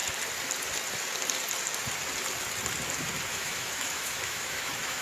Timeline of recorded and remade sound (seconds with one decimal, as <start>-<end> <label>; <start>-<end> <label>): 0.0-3.3 recorded; 3.3-5.0 remade